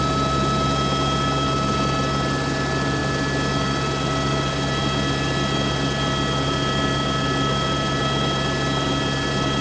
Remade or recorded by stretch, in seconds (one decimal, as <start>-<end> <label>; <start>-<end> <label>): 0.0-9.6 recorded